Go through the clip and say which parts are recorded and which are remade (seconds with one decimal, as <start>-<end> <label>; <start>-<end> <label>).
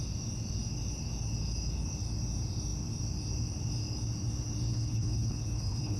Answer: 0.0-4.7 recorded; 4.7-6.0 remade